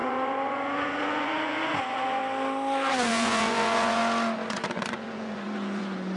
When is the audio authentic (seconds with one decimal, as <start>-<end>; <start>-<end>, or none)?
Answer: 2.2-2.9; 4.0-4.5